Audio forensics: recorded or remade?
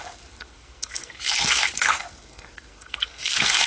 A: remade